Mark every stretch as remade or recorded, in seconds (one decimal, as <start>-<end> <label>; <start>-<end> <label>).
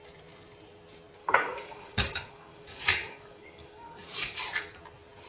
0.0-1.2 recorded; 1.2-4.4 remade; 4.4-5.3 recorded